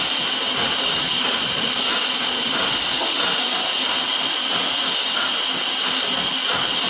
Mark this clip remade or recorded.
recorded